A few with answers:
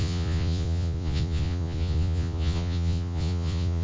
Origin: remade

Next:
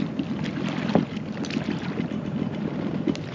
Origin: recorded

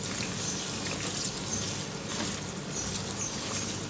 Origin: recorded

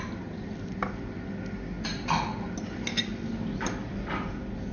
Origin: recorded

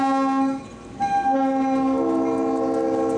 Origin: recorded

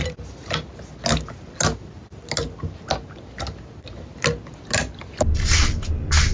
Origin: recorded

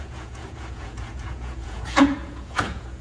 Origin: remade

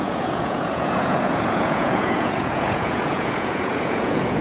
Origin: remade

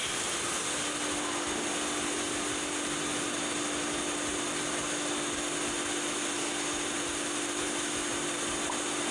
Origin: recorded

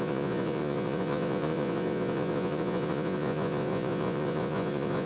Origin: remade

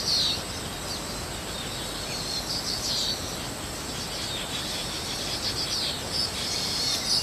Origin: recorded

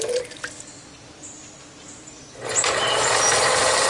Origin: recorded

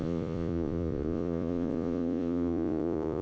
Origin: remade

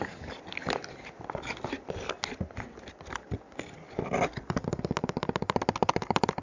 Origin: recorded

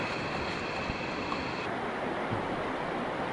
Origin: recorded